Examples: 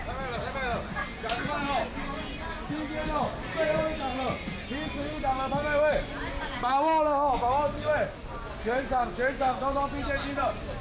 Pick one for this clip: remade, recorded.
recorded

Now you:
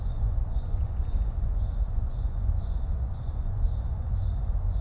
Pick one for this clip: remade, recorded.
remade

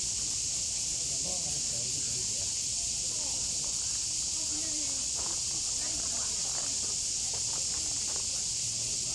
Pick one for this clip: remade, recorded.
recorded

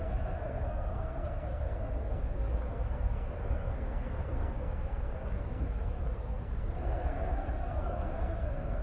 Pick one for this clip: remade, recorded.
remade